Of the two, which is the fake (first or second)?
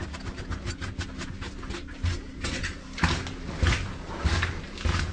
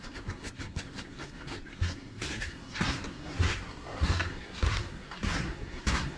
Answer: second